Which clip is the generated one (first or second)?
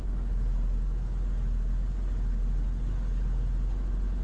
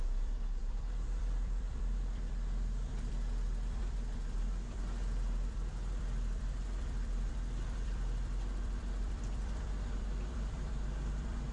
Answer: second